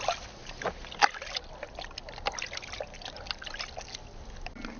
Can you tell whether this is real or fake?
real